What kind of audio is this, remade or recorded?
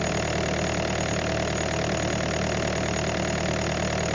recorded